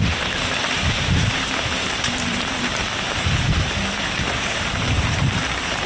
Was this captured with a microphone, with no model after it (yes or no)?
no